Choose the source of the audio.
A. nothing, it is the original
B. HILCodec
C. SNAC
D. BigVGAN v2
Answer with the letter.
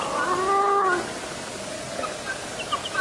A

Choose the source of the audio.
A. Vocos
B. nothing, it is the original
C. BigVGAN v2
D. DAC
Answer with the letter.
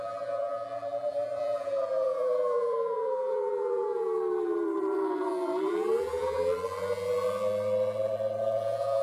C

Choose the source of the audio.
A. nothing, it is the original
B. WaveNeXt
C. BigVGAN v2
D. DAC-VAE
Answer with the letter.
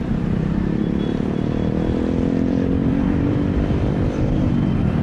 C